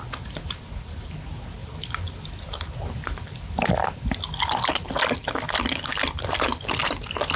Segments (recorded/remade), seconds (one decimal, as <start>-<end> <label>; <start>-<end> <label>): 0.0-7.4 recorded